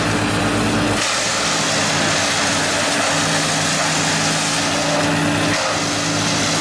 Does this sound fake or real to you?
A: real